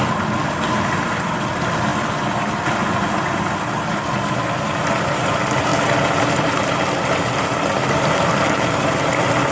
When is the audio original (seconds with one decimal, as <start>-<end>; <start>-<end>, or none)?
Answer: 0.0-1.9; 5.3-5.7; 9.1-9.5